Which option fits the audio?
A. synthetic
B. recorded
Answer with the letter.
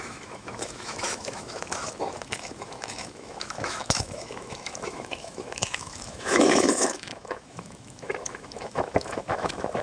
A